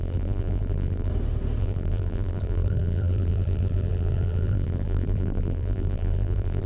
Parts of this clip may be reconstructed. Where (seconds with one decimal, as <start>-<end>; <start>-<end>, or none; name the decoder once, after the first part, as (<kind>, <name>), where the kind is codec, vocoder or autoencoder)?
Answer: 0.0-1.1 (vocoder, BigVGAN v2); 1.6-6.7